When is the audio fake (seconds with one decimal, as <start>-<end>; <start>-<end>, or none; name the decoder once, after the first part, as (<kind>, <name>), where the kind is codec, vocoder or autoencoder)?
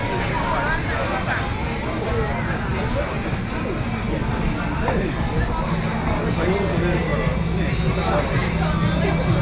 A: none